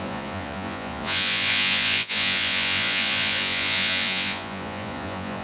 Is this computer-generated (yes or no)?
yes